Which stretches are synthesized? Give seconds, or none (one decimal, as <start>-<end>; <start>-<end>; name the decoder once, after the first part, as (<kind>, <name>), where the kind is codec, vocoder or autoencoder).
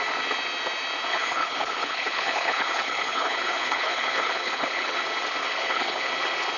1.1-5.0 (codec, HILCodec); 5.4-6.1